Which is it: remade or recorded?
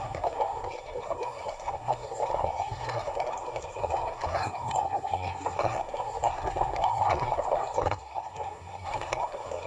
remade